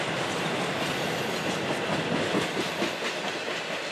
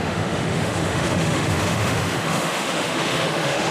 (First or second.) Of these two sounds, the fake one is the second